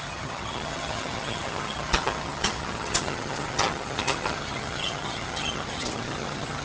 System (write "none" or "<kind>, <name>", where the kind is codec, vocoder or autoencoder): vocoder, HiFi-GAN